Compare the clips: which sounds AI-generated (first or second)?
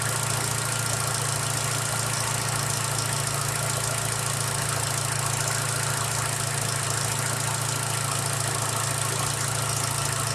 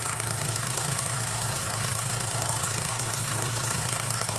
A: second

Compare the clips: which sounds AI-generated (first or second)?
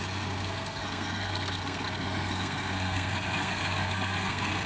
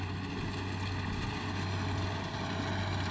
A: first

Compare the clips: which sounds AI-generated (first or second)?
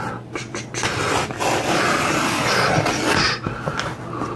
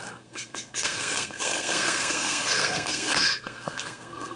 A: second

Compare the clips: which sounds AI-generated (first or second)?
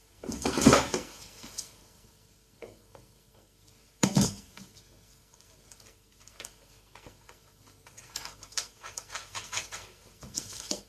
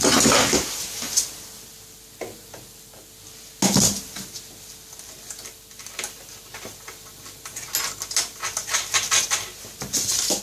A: first